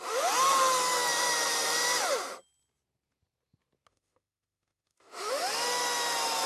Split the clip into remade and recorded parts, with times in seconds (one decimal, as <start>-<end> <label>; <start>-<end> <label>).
0.0-3.9 recorded; 3.9-5.3 remade; 5.3-6.5 recorded